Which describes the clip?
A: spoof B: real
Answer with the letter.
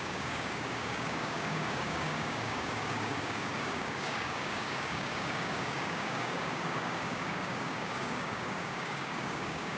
A